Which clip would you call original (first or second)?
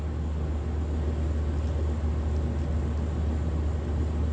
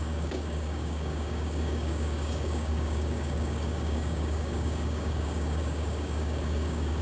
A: first